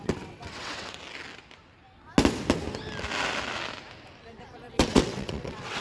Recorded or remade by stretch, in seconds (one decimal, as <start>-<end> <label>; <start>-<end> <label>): 0.0-1.0 remade; 1.0-4.5 recorded; 4.5-5.8 remade